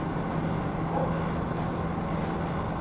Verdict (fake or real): real